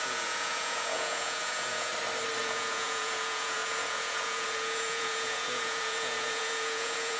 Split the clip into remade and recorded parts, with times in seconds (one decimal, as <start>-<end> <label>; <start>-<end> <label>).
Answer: 0.0-1.9 remade; 1.9-2.4 recorded; 2.4-7.2 remade